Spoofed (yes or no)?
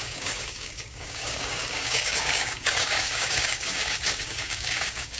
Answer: yes